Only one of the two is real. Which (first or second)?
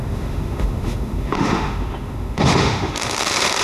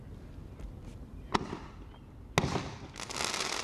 second